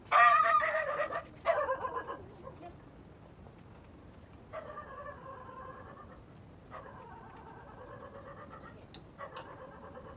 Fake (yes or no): no